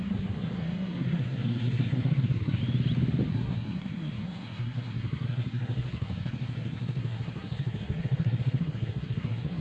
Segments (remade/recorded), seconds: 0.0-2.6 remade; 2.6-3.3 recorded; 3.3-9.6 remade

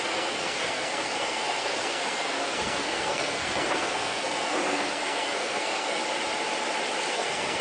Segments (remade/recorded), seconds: 0.0-6.0 remade; 6.0-7.1 recorded; 7.1-7.6 remade